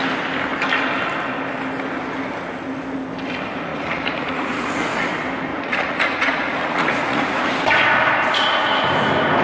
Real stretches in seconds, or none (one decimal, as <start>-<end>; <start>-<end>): 0.0-3.7; 5.1-5.5; 7.5-9.4